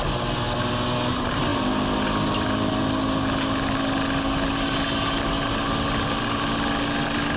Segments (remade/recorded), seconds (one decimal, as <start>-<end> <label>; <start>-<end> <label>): 0.0-7.4 recorded